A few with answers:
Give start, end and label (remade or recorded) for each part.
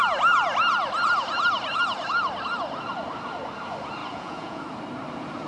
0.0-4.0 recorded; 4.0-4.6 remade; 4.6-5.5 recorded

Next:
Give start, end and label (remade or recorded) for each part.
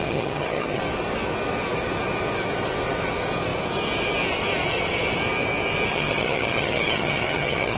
0.0-0.8 remade; 0.8-5.9 recorded; 5.9-7.8 remade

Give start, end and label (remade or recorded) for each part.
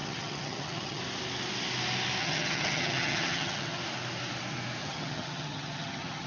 0.0-1.0 remade; 1.0-2.2 recorded; 2.2-3.8 remade; 3.8-4.8 recorded; 4.8-6.3 remade